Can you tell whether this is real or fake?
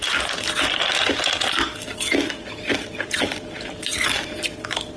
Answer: real